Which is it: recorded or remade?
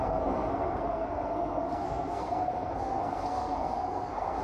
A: remade